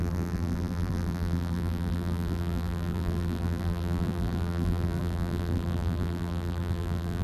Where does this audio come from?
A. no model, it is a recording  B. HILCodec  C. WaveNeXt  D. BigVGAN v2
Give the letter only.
D